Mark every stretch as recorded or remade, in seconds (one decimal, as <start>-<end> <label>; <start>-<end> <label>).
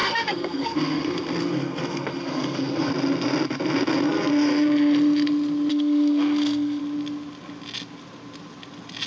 0.0-2.9 remade; 2.9-5.7 recorded; 5.7-6.8 remade; 6.8-9.1 recorded